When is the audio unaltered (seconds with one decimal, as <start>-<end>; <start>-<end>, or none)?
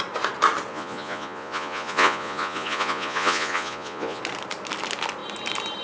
0.0-0.7; 4.2-5.8